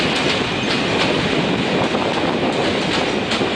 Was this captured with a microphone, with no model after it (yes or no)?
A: yes